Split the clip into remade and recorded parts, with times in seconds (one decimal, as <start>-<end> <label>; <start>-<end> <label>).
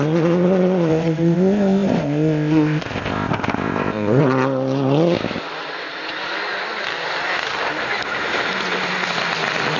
0.0-0.9 recorded; 0.9-4.2 remade; 4.2-9.8 recorded